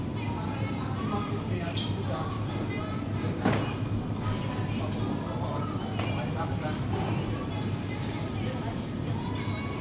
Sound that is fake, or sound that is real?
real